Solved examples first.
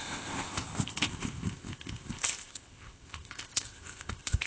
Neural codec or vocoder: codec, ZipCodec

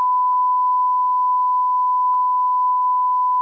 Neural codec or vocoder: codec, DAC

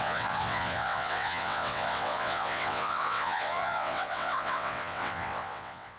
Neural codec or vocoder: vocoder, WaveNeXt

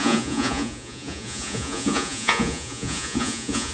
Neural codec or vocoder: vocoder, Vocos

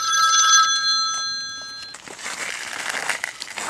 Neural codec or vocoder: none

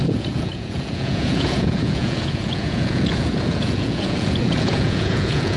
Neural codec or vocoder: vocoder, Vocos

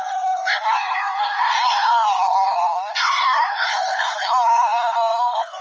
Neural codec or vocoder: codec, SNAC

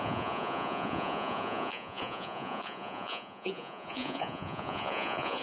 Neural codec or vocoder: vocoder, Vocos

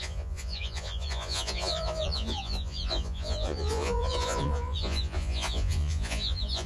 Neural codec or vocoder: vocoder, Vocos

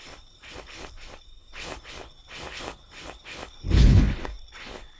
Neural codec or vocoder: codec, HILCodec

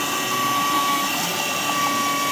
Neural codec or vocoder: none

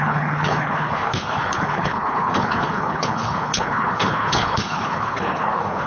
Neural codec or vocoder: codec, HILCodec